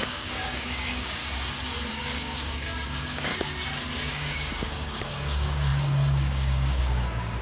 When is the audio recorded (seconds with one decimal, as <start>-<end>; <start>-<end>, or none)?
1.2-1.9; 3.3-4.1